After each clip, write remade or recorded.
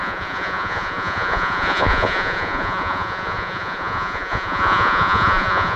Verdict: remade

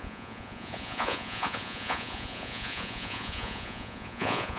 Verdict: remade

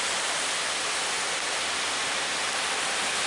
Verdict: recorded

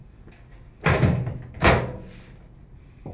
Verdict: recorded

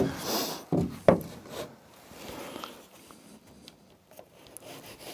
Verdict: recorded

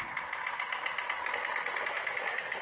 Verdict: recorded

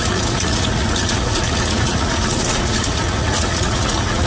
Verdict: remade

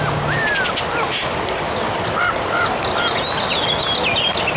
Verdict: recorded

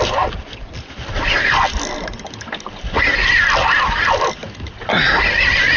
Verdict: recorded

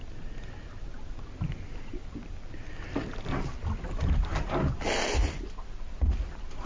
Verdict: recorded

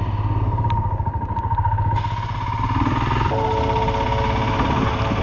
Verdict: recorded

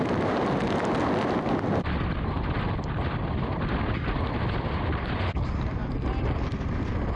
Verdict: recorded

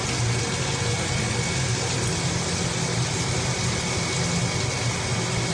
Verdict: recorded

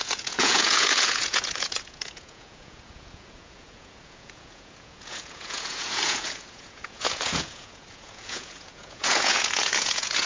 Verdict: remade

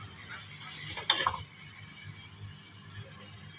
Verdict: recorded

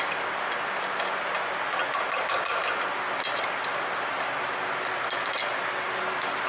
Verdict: recorded